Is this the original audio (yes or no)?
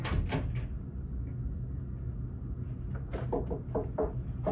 yes